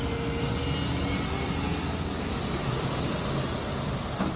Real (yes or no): yes